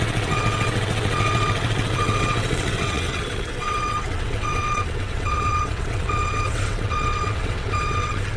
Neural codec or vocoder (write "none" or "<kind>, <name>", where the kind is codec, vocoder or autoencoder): vocoder, WaveNeXt